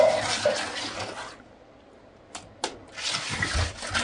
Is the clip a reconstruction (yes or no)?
no